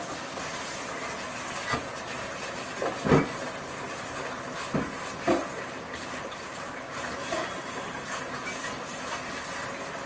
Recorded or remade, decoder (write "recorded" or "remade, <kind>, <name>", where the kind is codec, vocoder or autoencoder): recorded